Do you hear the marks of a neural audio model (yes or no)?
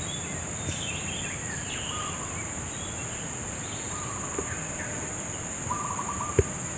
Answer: no